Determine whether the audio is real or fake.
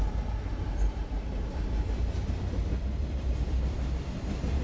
fake